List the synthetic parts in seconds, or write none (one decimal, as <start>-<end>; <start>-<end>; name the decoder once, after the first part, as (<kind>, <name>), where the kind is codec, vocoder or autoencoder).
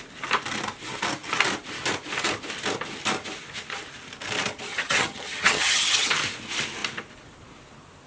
4.7-6.1 (vocoder, HiFi-GAN)